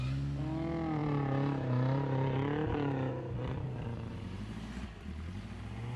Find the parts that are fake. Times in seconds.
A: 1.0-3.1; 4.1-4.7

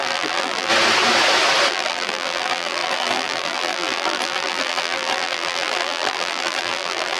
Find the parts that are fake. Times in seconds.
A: 0.0-0.7; 1.7-7.2

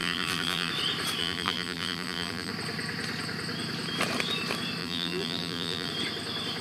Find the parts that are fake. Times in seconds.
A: 0.0-0.7; 1.2-2.5; 4.8-5.9

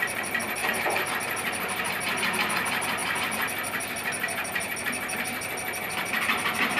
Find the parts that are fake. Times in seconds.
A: 0.6-1.1